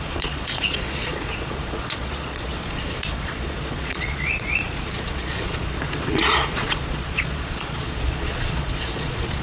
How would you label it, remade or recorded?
remade